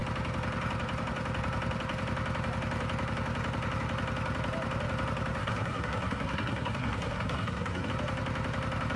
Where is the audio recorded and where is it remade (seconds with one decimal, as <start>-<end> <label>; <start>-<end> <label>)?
0.0-5.4 recorded; 5.4-7.9 remade; 7.9-9.0 recorded